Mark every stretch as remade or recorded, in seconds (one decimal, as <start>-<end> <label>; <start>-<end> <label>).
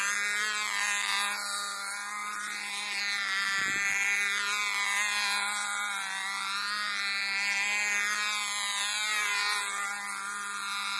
0.0-2.2 recorded; 2.2-3.0 remade; 3.0-11.0 recorded